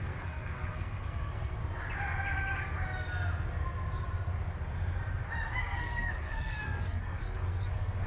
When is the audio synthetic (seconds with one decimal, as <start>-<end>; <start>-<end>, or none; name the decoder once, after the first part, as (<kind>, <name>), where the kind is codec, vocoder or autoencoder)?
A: 0.0-1.6 (codec, SNAC); 5.6-8.1